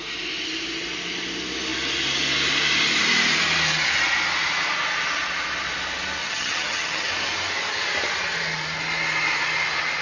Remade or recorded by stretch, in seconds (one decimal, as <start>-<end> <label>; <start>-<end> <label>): 0.0-6.2 recorded; 6.2-7.1 remade; 7.1-10.0 recorded